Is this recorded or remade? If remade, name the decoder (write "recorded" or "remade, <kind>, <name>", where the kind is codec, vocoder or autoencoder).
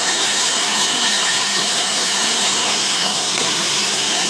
remade, codec, SNAC